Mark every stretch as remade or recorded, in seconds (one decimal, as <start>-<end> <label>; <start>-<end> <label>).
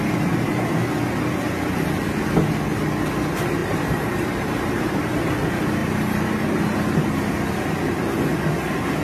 0.0-3.6 recorded; 3.6-5.0 remade; 5.0-5.8 recorded; 5.8-7.3 remade; 7.3-9.0 recorded